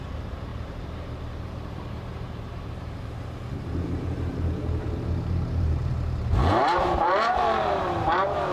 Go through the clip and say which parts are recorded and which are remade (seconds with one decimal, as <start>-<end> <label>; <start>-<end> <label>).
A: 0.0-8.5 remade